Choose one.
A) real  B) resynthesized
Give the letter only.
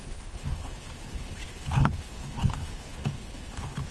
B